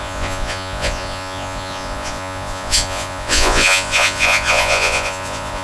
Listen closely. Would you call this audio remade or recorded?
remade